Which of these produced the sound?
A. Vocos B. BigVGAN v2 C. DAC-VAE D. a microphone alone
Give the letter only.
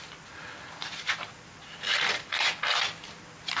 D